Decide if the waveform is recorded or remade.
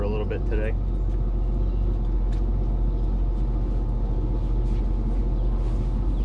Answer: recorded